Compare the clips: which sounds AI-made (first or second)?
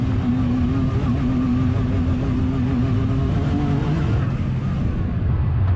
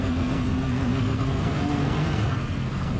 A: second